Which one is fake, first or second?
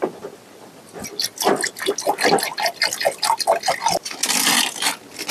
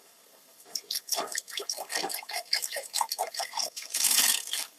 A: second